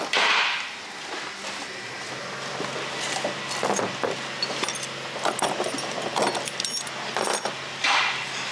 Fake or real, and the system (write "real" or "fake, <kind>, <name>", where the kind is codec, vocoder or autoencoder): real